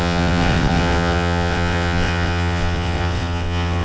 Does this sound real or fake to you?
fake